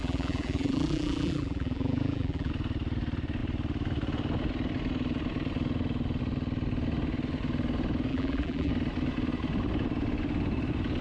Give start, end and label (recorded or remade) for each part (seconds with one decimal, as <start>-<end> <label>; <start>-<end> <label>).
0.0-2.5 remade; 2.5-8.1 recorded; 8.1-8.7 remade; 8.7-11.0 recorded